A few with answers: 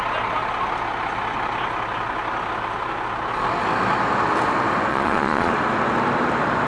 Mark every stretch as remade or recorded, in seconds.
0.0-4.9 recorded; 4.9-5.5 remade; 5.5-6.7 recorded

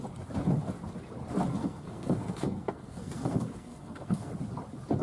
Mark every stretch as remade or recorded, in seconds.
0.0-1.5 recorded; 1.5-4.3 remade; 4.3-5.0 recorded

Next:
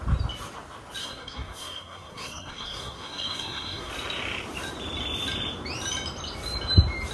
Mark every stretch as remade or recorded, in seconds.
0.0-1.0 recorded; 1.0-3.9 remade; 3.9-7.1 recorded